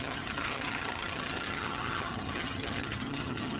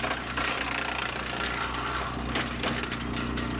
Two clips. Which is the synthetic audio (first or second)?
first